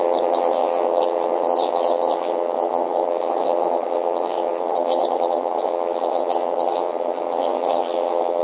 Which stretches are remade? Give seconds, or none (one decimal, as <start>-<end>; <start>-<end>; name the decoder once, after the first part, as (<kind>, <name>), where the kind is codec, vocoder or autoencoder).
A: 0.0-8.4 (vocoder, HiFi-GAN)